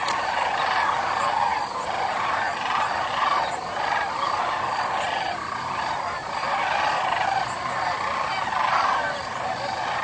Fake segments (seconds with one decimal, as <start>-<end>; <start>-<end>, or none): none